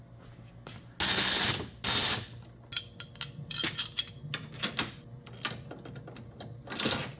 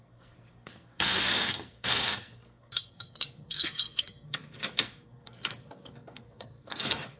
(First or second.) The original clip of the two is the first